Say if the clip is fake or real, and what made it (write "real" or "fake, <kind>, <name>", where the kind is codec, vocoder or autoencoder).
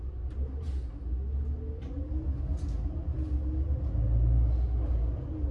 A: real